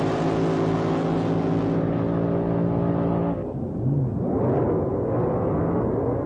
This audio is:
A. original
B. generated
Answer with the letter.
A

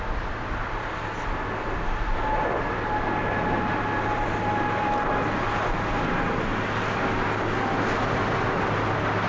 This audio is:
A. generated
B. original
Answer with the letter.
B